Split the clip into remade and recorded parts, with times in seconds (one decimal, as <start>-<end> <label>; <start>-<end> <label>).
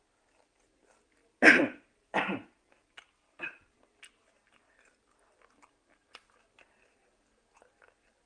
0.0-1.2 recorded; 1.2-3.7 remade; 3.7-8.3 recorded